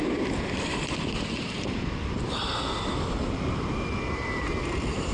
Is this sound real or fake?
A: fake